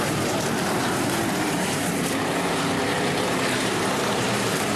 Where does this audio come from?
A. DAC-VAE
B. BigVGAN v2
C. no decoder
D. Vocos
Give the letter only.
B